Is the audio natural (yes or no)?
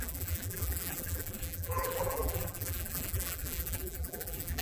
no